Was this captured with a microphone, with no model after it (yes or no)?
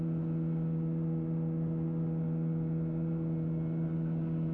yes